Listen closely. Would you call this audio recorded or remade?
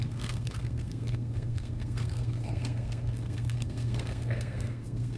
remade